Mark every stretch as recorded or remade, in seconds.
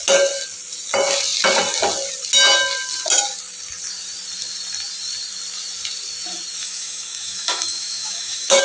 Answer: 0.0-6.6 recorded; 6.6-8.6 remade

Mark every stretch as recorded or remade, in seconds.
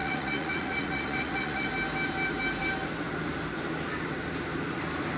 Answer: 0.0-1.7 remade; 1.7-5.2 recorded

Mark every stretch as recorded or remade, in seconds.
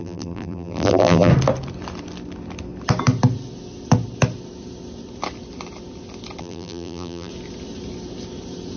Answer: 0.0-1.3 remade; 1.3-6.4 recorded; 6.4-7.3 remade; 7.3-8.8 recorded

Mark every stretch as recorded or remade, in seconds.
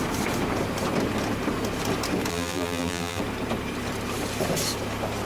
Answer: 0.0-2.3 recorded; 2.3-3.2 remade; 3.2-5.2 recorded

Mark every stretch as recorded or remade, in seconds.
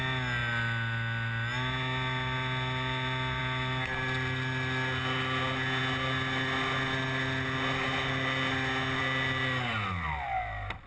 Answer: 0.0-10.9 recorded